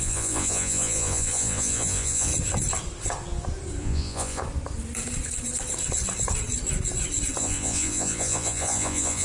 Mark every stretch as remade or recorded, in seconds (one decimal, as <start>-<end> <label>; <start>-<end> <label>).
0.0-2.3 remade; 2.3-3.8 recorded; 3.8-4.4 remade; 4.4-7.4 recorded; 7.4-9.2 remade

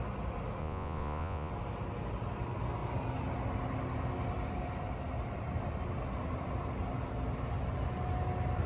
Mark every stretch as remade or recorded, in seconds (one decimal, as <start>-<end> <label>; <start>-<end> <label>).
0.0-0.6 recorded; 0.6-1.5 remade; 1.5-8.7 recorded

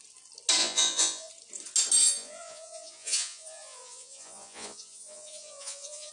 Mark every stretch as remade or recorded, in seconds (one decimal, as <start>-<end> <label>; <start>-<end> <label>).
0.0-0.6 recorded; 0.6-1.3 remade; 1.3-2.0 recorded; 2.0-6.1 remade

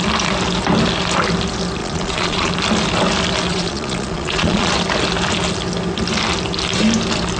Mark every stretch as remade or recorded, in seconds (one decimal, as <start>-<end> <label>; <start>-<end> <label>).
0.0-1.8 recorded; 1.8-2.5 remade; 2.5-3.5 recorded; 3.5-4.7 remade; 4.7-7.4 recorded

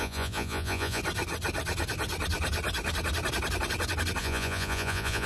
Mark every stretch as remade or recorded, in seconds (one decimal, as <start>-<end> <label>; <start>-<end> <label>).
0.0-1.0 remade; 1.0-4.2 recorded; 4.2-5.3 remade

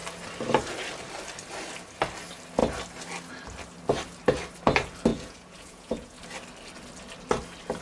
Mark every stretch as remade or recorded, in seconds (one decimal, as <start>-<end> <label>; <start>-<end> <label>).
0.0-5.1 recorded; 5.1-6.2 remade; 6.2-7.8 recorded

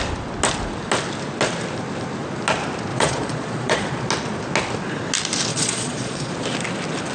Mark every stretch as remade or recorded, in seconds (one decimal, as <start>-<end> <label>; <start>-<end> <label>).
0.0-2.9 recorded; 2.9-4.1 remade; 4.1-5.5 recorded; 5.5-6.3 remade; 6.3-7.1 recorded